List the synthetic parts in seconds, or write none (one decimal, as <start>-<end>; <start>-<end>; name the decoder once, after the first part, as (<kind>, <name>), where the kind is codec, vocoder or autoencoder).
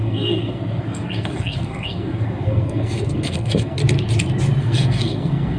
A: 0.0-3.8 (codec, SNAC); 4.6-5.6